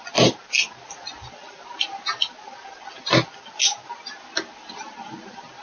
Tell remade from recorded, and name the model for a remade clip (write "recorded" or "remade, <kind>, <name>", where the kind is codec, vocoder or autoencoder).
recorded